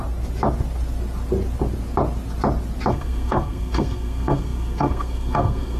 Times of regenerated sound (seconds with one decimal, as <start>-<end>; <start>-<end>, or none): 2.9-5.8